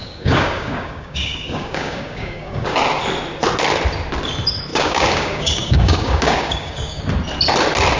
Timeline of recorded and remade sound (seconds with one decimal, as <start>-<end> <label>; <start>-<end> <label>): 0.0-2.8 remade; 2.8-4.7 recorded; 4.7-7.0 remade; 7.0-8.0 recorded